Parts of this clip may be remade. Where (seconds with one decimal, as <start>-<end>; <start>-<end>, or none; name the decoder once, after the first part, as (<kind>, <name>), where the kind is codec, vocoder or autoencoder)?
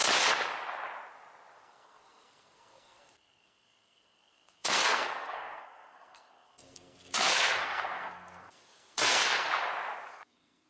1.6-9.5 (codec, SNAC); 10.1-10.7